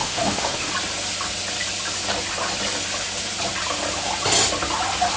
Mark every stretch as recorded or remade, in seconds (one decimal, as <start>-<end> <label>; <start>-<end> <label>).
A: 0.0-0.7 remade; 0.7-5.2 recorded